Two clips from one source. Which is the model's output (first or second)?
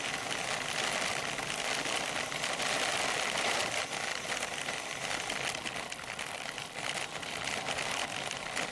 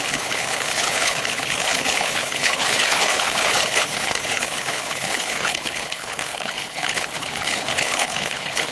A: second